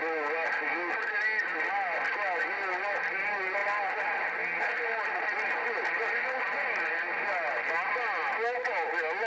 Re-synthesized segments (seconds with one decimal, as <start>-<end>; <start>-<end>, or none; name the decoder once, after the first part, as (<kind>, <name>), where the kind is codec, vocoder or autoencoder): none